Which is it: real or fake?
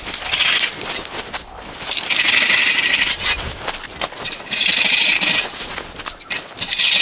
fake